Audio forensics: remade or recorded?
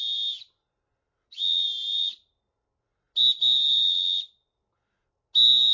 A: recorded